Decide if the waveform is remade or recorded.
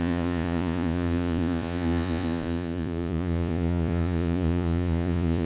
remade